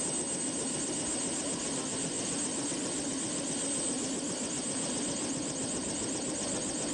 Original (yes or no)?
yes